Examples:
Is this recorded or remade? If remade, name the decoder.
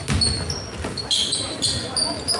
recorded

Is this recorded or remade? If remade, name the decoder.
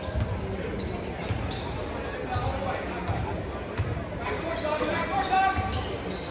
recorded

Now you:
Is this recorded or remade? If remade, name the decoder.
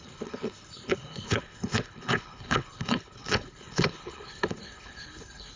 remade, codec, HILCodec